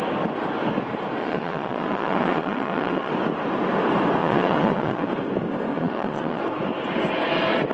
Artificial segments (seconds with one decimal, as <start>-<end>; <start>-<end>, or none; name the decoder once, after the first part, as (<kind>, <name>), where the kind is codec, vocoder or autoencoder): 1.2-3.1 (vocoder, Vocos); 4.2-5.1; 5.7-6.4